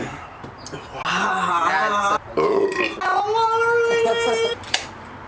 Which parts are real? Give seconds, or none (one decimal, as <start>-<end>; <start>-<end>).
0.0-5.3